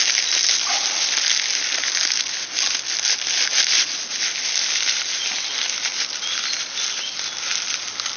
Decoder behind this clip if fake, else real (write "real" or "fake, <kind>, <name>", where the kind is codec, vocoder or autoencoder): real